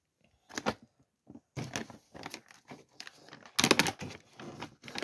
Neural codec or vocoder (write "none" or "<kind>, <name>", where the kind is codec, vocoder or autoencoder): none